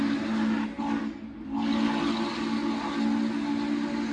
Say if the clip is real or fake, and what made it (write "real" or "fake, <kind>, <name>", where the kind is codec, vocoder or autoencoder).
real